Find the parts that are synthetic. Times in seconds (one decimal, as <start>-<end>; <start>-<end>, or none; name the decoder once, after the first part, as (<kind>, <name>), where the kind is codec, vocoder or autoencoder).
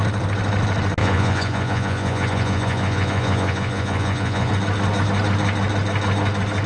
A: 1.0-4.5 (vocoder, Vocos)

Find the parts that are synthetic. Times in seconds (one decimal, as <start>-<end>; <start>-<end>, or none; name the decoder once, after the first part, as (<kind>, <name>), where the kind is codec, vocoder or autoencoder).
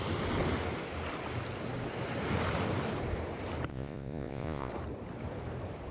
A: 3.7-4.7 (vocoder, Vocos)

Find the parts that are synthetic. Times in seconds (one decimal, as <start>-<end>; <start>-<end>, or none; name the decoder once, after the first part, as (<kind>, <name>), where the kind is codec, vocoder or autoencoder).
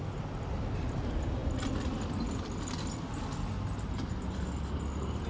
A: none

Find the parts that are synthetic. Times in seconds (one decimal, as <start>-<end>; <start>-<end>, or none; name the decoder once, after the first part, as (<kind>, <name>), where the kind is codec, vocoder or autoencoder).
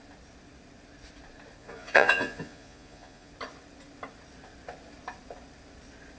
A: 1.6-3.3 (vocoder, Vocos)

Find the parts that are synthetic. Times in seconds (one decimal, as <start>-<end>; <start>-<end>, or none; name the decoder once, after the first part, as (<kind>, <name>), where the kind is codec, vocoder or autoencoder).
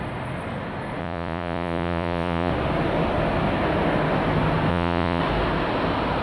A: 1.0-2.5 (vocoder, Vocos); 4.7-5.2